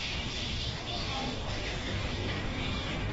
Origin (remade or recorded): remade